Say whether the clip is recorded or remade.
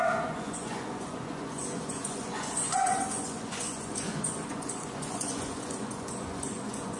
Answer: remade